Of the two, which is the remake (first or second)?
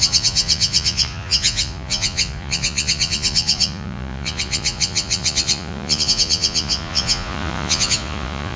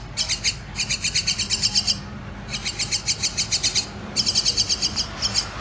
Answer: first